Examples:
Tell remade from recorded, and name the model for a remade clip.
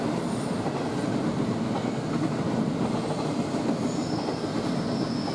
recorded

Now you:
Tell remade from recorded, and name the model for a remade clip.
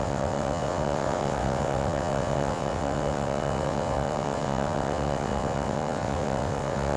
remade, vocoder, WaveNeXt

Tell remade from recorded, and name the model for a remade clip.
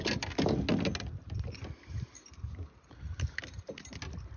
recorded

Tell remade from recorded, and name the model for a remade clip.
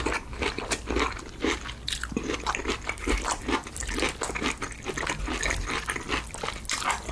recorded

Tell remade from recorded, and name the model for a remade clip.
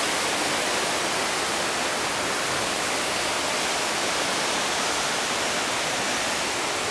recorded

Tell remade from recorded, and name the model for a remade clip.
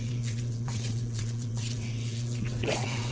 remade, vocoder, WaveNeXt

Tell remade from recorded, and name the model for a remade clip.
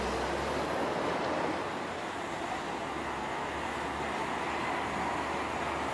recorded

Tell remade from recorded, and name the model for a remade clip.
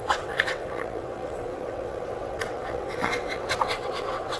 remade, vocoder, WaveNeXt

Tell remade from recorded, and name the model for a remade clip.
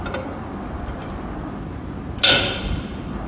recorded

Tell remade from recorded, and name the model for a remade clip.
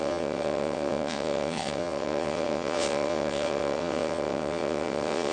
remade, vocoder, WaveNeXt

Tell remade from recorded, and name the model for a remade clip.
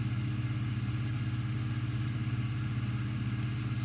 recorded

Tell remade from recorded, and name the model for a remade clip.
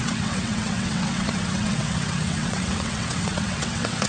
remade, vocoder, WaveNeXt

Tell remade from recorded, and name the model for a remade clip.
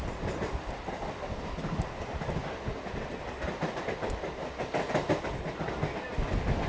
recorded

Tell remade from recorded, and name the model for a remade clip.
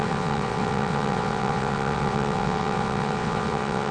remade, vocoder, WaveNeXt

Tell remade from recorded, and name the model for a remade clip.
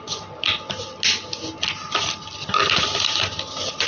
recorded